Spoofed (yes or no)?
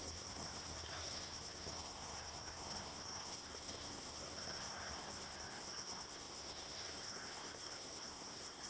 yes